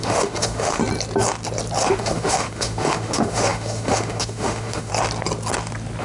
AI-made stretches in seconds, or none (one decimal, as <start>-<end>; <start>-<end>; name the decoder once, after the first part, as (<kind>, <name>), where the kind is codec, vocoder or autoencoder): 0.0-0.8 (autoencoder, DAC-VAE); 1.9-4.9